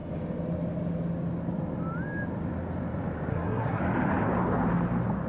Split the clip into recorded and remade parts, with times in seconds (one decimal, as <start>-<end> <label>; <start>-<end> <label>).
0.0-3.3 recorded; 3.3-3.8 remade; 3.8-5.3 recorded